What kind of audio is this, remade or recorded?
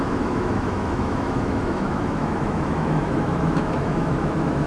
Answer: remade